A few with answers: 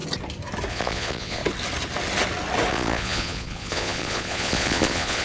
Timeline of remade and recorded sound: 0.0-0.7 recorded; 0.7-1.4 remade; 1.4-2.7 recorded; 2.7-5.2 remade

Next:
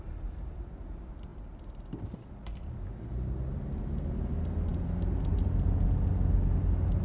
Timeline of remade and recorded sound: 0.0-7.0 recorded

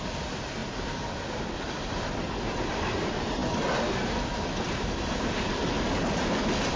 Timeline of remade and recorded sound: 0.0-6.8 recorded

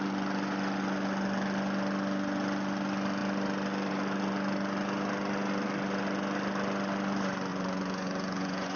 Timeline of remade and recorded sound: 0.0-7.5 recorded; 7.5-8.8 remade

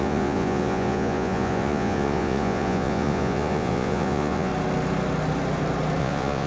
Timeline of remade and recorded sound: 0.0-4.5 remade; 4.5-6.0 recorded; 6.0-6.5 remade